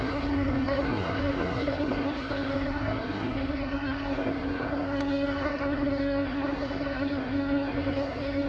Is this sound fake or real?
fake